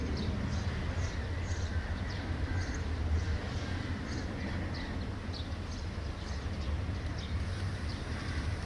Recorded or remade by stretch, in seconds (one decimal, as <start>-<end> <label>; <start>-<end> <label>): 0.0-1.3 recorded; 1.3-2.5 remade; 2.5-7.7 recorded; 7.7-8.7 remade